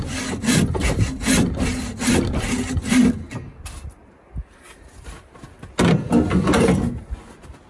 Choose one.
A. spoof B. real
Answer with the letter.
B